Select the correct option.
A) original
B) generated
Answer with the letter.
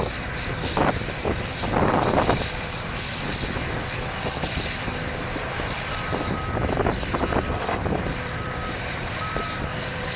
B